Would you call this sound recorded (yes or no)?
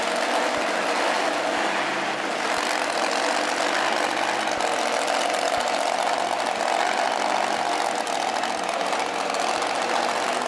yes